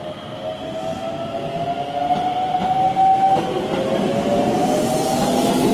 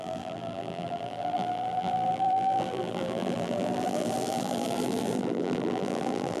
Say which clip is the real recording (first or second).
first